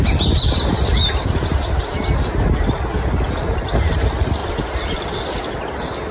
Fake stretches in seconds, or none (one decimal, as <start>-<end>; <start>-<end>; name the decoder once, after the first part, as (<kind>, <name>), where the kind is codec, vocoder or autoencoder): 4.4-6.1 (vocoder, BigVGAN v2)